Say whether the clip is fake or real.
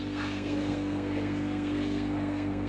fake